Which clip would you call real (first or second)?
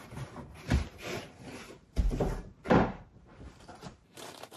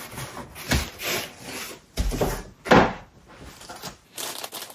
second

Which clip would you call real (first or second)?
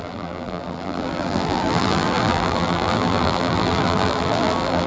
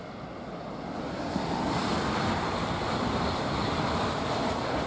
second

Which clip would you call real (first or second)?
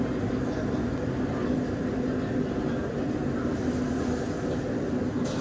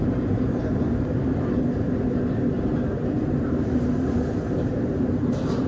first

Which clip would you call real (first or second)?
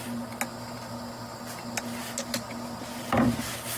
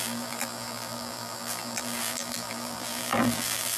first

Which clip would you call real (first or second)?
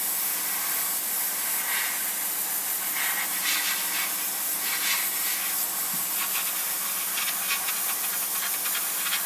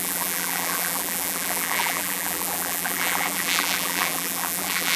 first